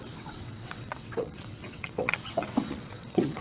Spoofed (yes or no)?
yes